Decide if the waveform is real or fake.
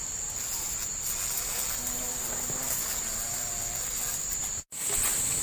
real